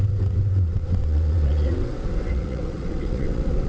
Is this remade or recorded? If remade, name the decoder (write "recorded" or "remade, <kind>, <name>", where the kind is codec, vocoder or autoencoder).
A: remade, vocoder, WaveNeXt